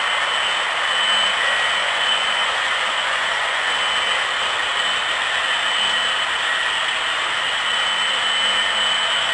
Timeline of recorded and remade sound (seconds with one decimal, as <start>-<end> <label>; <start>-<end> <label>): 0.0-1.8 recorded; 1.8-3.8 remade; 3.8-9.3 recorded